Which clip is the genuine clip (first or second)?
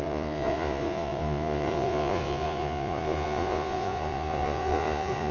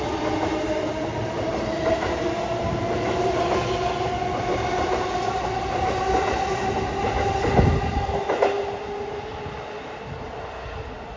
second